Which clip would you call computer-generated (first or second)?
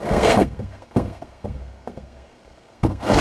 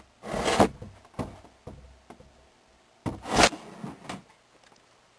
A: first